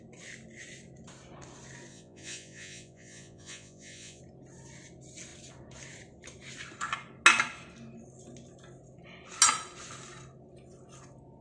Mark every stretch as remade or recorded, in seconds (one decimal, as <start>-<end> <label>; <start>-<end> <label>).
0.0-1.9 recorded; 1.9-4.2 remade; 4.2-11.4 recorded